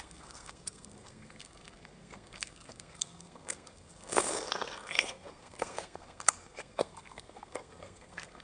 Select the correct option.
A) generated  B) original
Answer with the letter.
A